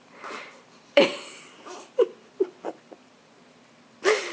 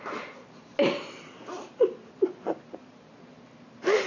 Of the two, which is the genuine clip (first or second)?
second